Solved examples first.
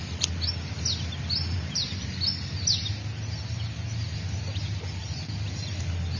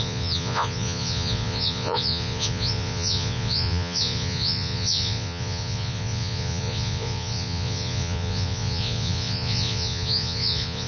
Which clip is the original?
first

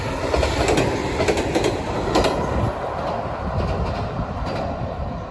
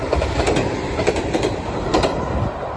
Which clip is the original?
first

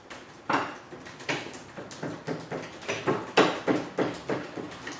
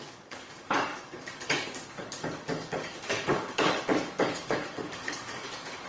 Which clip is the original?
first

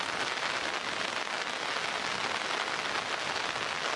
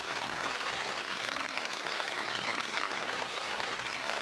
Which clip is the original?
first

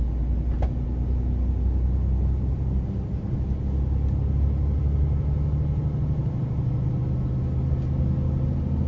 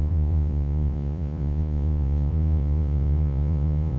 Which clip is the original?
first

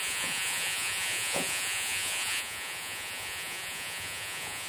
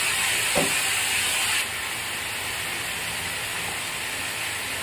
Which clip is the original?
second